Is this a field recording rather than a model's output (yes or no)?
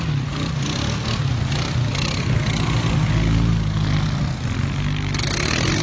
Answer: yes